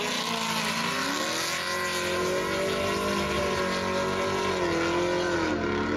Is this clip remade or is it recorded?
recorded